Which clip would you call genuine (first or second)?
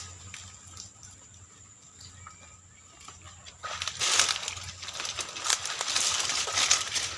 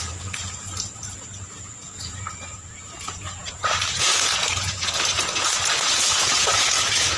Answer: first